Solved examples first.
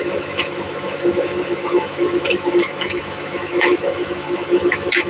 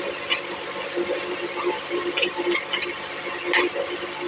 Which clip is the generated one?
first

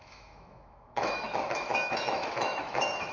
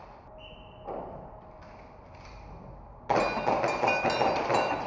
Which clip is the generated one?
first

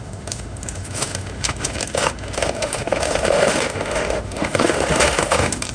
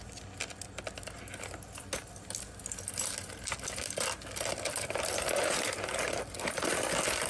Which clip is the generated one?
first